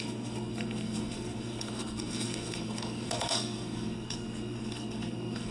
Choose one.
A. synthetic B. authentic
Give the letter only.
A